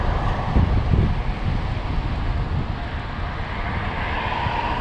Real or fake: real